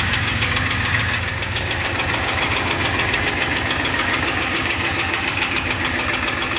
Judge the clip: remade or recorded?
remade